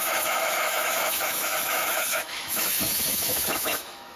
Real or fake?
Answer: fake